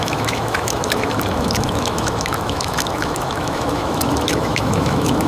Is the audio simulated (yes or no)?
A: yes